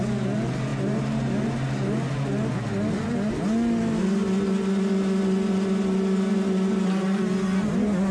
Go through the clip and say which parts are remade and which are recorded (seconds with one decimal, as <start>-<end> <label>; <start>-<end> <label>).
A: 0.0-8.1 recorded